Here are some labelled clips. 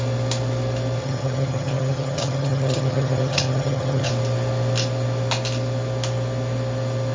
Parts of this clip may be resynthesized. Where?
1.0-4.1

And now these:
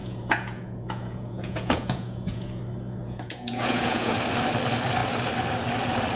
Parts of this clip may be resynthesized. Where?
0.0-2.6; 3.0-4.1

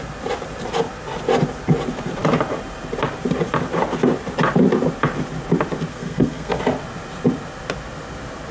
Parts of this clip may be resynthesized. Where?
5.9-6.6

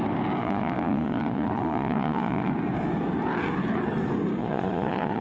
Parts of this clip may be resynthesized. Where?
0.4-2.5; 4.4-5.2

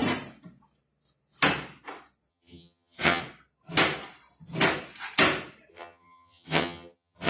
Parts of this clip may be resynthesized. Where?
2.3-3.2; 5.7-7.3

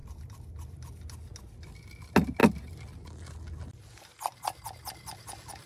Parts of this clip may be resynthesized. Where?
none